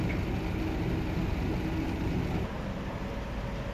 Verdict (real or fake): real